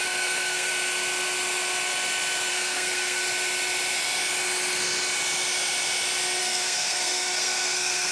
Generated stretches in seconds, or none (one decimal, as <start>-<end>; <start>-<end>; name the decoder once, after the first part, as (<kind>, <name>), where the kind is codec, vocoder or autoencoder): 0.0-0.7 (codec, SNAC); 2.5-3.2; 6.4-8.1